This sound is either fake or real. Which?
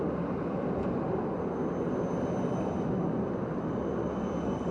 real